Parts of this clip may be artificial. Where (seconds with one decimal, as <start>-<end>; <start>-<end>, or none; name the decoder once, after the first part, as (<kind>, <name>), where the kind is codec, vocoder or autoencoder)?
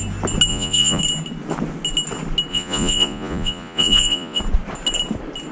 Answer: 0.5-1.0 (vocoder, Vocos); 2.5-4.4